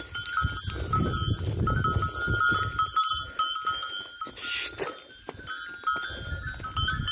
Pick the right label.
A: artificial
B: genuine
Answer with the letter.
B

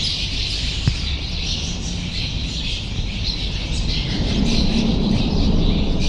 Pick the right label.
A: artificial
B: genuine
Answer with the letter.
B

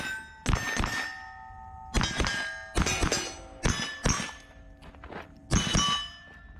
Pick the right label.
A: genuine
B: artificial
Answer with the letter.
A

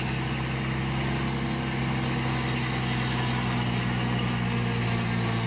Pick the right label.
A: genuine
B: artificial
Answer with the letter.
A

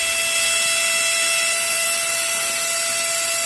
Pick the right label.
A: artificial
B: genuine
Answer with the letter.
A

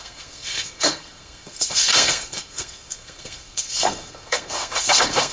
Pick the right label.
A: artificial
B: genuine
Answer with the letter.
A